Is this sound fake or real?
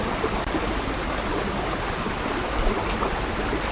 real